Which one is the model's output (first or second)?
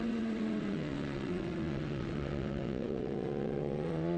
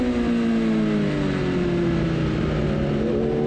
first